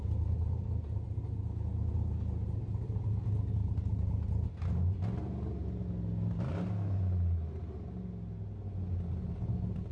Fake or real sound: real